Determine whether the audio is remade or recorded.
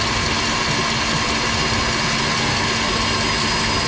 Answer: recorded